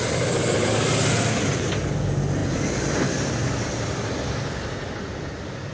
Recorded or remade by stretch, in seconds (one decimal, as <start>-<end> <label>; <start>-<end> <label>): 0.0-5.7 recorded